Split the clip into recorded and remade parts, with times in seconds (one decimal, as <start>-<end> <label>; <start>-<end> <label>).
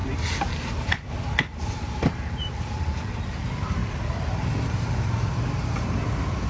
0.0-1.1 remade; 1.1-1.5 recorded; 1.5-3.1 remade; 3.1-3.8 recorded; 3.8-5.4 remade; 5.4-6.5 recorded